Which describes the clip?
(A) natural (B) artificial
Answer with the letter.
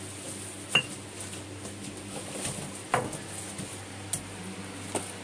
A